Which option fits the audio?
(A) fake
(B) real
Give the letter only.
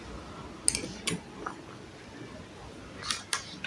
B